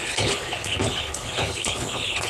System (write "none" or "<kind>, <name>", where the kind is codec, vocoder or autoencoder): codec, HILCodec